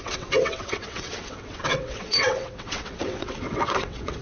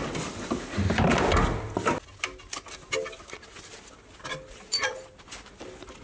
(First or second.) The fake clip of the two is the first